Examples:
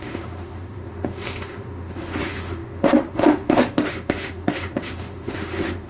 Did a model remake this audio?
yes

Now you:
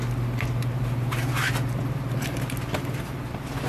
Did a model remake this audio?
no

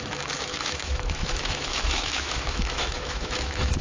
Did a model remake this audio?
yes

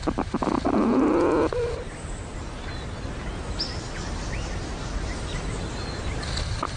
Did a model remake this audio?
no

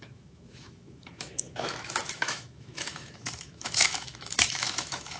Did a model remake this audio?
yes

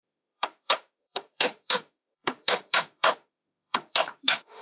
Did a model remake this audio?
yes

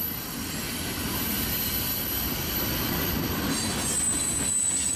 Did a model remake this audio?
no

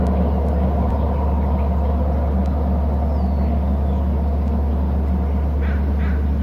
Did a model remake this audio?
no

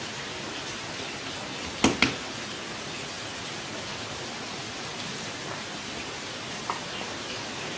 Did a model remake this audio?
no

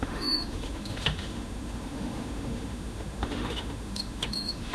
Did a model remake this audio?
yes